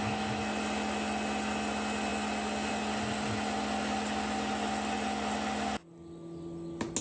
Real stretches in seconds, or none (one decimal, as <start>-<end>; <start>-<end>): 0.0-7.0